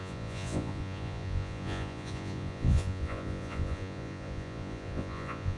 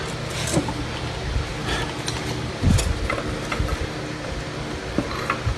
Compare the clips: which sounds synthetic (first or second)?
first